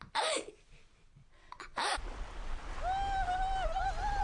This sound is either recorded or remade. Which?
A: recorded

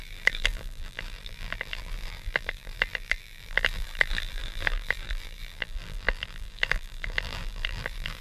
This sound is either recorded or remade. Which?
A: remade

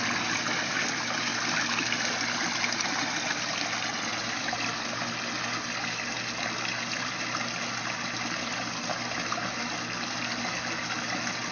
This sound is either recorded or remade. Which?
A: recorded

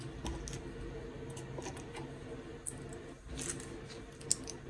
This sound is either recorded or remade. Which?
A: recorded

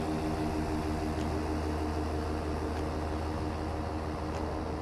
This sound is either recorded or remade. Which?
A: recorded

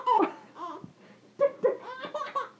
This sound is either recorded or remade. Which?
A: remade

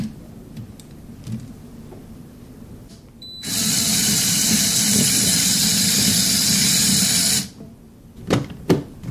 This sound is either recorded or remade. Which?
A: remade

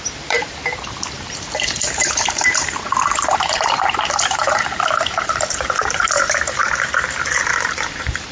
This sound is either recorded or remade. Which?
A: remade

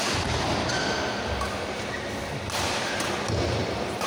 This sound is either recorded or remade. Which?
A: recorded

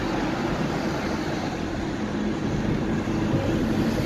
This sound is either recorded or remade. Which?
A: recorded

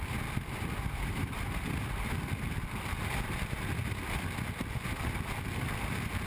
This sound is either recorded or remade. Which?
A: remade